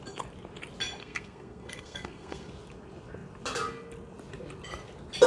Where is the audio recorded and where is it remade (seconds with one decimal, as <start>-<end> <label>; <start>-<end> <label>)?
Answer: 0.0-1.0 recorded; 1.0-2.5 remade; 2.5-5.3 recorded